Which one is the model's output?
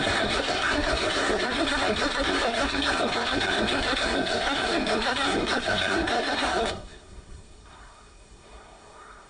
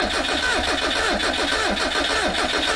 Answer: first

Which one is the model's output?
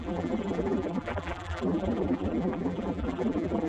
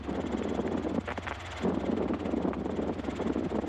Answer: first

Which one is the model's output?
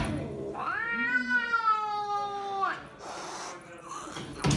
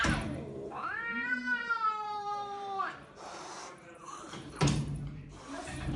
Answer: second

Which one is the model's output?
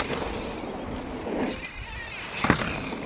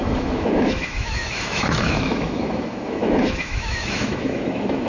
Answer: second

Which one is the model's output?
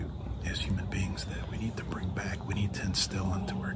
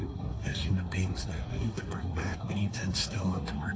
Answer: second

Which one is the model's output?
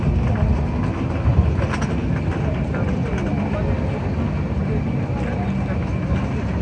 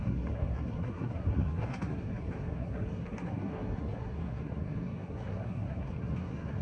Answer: second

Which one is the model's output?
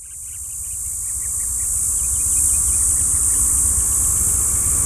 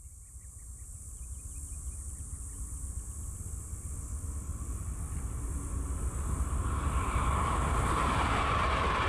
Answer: second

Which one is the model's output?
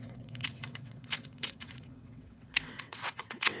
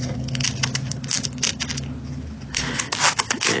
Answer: first